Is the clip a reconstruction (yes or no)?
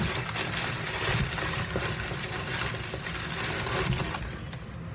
no